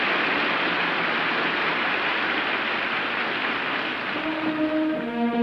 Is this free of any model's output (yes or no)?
yes